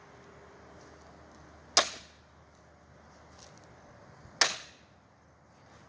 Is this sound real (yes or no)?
yes